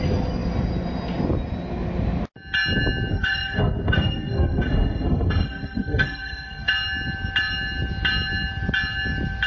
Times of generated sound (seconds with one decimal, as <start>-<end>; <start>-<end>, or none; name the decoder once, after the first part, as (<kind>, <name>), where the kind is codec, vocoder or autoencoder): 3.1-6.7 (codec, SNAC)